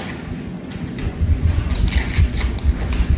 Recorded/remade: remade